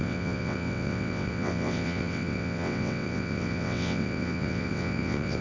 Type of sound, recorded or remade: remade